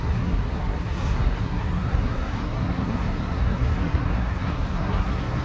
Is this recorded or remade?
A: remade